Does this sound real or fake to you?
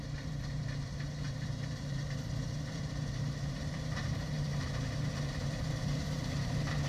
fake